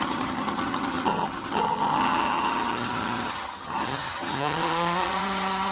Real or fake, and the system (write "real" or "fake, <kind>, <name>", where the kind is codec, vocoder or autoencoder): fake, vocoder, HiFi-GAN